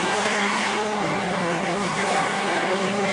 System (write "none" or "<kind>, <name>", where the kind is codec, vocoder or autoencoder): codec, SNAC